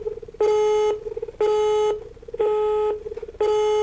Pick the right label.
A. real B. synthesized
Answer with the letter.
A